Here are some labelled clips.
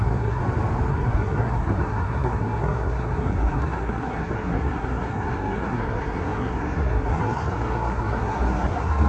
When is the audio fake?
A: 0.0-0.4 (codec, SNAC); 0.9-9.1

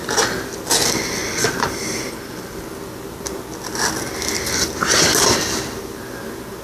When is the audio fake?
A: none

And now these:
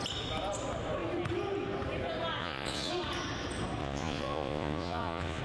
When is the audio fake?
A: 2.4-2.9 (vocoder, Vocos); 3.8-5.4

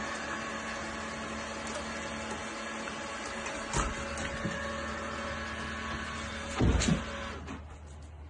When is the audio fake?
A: none

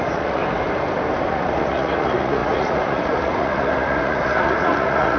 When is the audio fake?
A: 0.0-0.4 (vocoder, Vocos); 1.3-5.2